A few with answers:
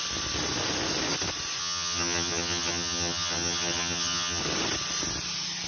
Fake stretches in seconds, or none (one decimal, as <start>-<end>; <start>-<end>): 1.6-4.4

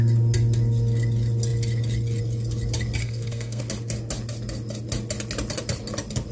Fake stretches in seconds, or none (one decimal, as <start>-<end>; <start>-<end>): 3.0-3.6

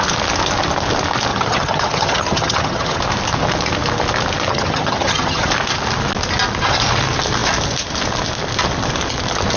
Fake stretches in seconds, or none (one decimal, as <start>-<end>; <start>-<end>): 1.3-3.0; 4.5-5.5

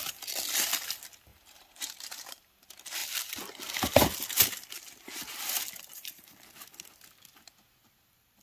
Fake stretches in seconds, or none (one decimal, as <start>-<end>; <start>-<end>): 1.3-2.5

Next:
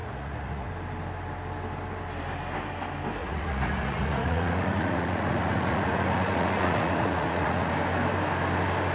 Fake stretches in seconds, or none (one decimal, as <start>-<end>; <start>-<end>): 0.0-0.7; 3.2-7.7

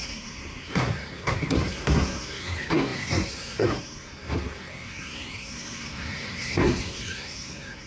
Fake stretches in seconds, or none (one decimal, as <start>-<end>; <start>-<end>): 0.0-7.9

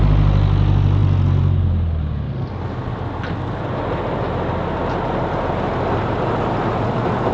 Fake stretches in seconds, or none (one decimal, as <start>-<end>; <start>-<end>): none

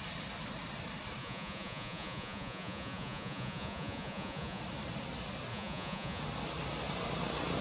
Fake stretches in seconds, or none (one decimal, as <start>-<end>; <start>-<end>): 1.2-4.6; 5.5-6.2